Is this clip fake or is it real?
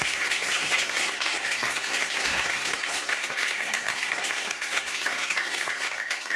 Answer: fake